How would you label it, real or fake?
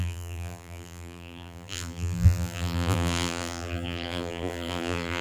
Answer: fake